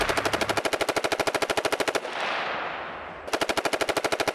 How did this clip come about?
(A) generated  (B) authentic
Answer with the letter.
B